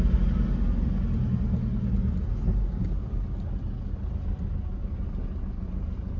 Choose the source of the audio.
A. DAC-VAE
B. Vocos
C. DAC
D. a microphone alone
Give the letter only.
D